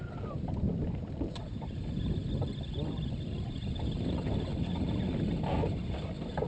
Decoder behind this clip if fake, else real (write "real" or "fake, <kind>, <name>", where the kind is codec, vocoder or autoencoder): real